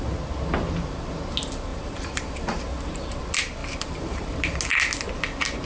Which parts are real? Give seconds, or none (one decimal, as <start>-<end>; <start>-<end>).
0.0-1.7; 3.2-3.6; 4.3-5.7